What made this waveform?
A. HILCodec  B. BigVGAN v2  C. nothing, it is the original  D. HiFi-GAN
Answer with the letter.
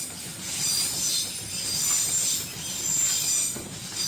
C